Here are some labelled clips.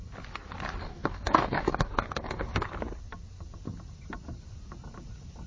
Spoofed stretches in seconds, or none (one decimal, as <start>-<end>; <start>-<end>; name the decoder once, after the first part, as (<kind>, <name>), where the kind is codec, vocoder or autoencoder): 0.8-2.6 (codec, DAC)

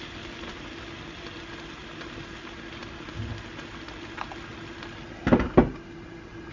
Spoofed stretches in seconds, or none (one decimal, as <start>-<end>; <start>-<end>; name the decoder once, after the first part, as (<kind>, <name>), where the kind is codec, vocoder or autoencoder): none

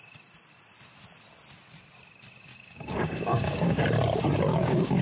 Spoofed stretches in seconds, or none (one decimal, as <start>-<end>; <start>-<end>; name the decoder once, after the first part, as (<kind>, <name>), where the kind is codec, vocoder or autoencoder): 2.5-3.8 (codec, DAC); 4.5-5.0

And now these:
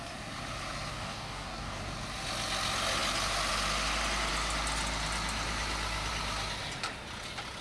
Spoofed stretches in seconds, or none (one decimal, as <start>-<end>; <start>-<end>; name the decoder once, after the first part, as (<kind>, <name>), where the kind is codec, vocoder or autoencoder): 0.9-1.8 (codec, DAC)

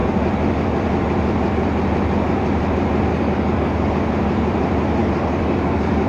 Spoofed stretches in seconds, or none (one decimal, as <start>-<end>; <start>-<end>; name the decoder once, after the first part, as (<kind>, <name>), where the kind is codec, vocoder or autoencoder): 3.1-3.9 (codec, DAC); 5.0-6.1